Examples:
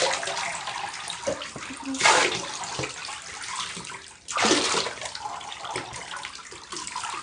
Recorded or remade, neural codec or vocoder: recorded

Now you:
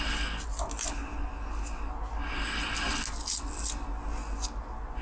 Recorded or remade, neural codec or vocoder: recorded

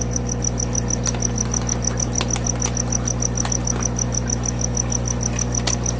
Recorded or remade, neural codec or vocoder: recorded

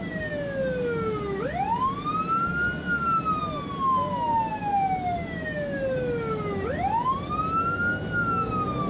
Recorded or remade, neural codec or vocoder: recorded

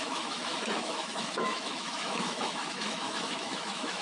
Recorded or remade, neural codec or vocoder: remade, autoencoder, DAC-VAE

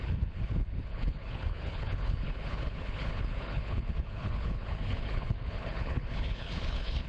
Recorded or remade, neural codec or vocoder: remade, codec, HILCodec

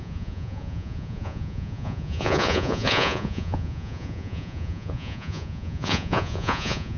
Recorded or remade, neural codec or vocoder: remade, vocoder, Vocos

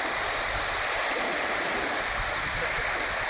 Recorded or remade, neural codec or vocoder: recorded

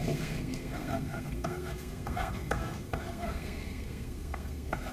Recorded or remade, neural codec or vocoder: remade, codec, SNAC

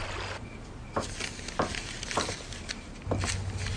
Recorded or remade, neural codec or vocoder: recorded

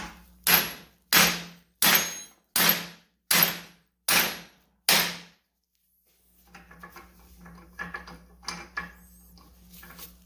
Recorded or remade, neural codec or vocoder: recorded